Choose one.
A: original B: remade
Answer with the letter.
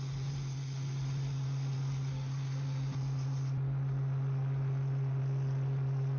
A